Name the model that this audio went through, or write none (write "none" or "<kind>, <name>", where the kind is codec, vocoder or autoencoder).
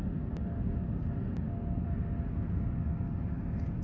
none